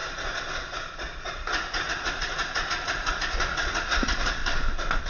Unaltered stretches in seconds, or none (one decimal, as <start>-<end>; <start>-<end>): 4.4-5.1